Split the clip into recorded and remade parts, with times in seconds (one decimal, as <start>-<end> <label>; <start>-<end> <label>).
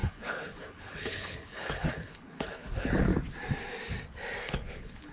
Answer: 0.0-3.1 remade; 3.1-4.4 recorded; 4.4-5.1 remade